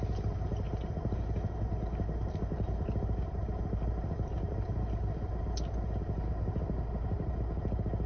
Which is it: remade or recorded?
recorded